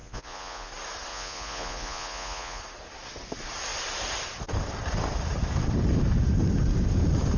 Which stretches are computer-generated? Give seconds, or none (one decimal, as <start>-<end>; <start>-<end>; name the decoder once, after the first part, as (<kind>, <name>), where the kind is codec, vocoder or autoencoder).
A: 0.0-0.7 (vocoder, Vocos); 1.1-2.6